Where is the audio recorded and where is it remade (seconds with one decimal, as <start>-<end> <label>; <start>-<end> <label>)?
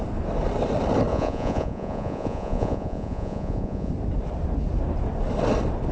0.0-1.1 recorded; 1.1-3.9 remade; 3.9-5.9 recorded